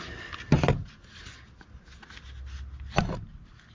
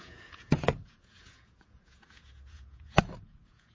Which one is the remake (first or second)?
second